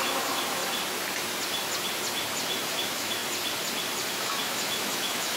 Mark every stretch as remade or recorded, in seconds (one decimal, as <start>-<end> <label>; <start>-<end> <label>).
0.0-0.6 remade; 0.6-2.7 recorded; 2.7-3.2 remade; 3.2-4.1 recorded; 4.1-5.4 remade

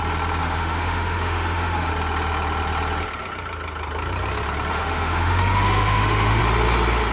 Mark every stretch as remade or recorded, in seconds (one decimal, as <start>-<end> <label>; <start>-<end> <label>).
0.0-0.4 recorded; 0.4-1.9 remade; 1.9-4.7 recorded; 4.7-6.4 remade; 6.4-7.1 recorded

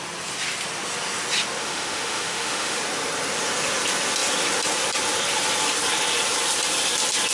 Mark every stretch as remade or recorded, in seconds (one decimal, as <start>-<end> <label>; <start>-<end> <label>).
0.0-1.6 recorded; 1.6-2.8 remade; 2.8-7.3 recorded

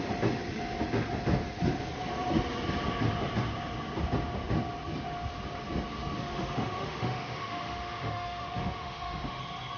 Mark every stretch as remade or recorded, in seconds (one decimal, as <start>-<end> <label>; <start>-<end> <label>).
0.0-6.2 recorded; 6.2-9.4 remade; 9.4-9.8 recorded

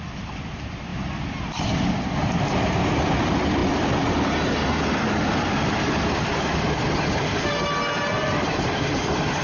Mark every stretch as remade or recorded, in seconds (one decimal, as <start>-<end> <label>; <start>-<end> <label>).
0.0-9.4 recorded

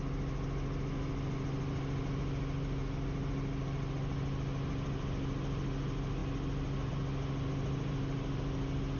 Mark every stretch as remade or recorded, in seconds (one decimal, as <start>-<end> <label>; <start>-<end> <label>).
0.0-9.0 recorded

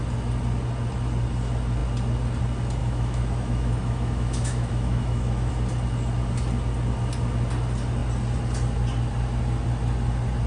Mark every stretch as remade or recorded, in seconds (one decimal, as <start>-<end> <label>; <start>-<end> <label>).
0.0-2.8 recorded; 2.8-5.5 remade; 5.5-10.5 recorded